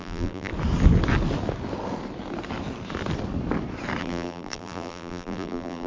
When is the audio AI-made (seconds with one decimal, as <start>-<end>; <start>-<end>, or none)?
0.0-0.5; 4.0-5.9